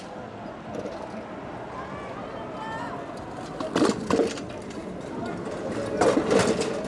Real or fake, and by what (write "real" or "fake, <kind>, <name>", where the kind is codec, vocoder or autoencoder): real